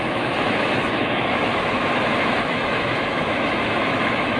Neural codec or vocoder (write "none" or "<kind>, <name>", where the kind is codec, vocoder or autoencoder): autoencoder, DAC-VAE